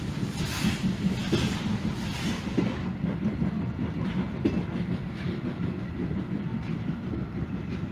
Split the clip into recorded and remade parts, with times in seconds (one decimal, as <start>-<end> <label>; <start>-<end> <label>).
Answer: 0.0-6.5 recorded; 6.5-7.3 remade; 7.3-7.9 recorded

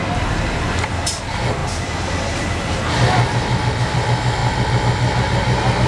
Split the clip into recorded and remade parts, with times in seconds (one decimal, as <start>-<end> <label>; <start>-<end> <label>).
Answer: 0.0-1.6 remade; 1.6-2.9 recorded; 2.9-4.4 remade; 4.4-5.9 recorded

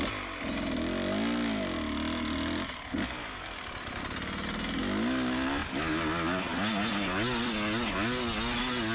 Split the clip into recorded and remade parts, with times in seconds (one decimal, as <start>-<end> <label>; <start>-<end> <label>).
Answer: 0.0-8.9 recorded